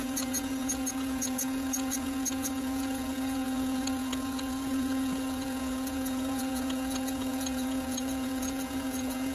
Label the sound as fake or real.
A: fake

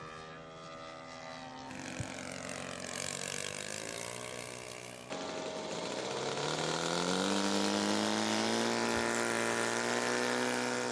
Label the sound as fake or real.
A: real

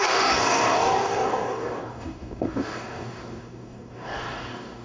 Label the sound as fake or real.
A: fake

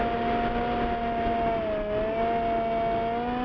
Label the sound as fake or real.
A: real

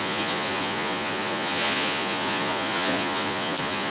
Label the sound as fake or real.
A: fake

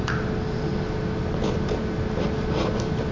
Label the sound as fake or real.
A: real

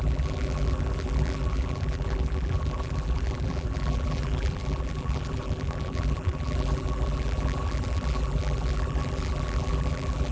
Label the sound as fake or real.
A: fake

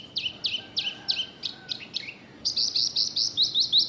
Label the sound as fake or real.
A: real